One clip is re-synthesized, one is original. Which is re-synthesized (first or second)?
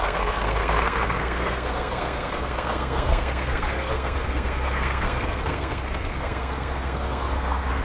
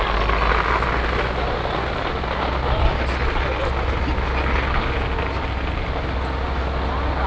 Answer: first